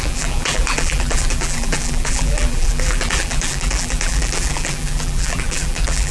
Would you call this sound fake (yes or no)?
yes